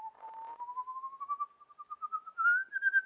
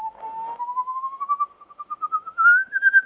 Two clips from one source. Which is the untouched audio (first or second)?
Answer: first